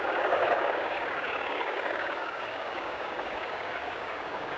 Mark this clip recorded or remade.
remade